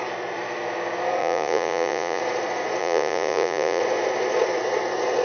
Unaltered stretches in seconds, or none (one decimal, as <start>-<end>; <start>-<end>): 0.0-1.2; 2.2-2.8; 3.8-5.2